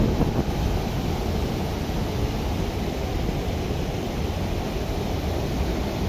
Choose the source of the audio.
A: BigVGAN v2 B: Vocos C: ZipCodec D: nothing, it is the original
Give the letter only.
A